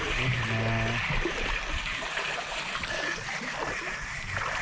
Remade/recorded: recorded